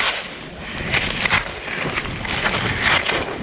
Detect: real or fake real